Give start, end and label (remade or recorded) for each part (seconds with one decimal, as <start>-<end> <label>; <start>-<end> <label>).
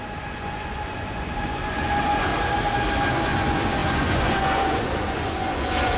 0.0-2.3 remade; 2.3-3.1 recorded; 3.1-6.0 remade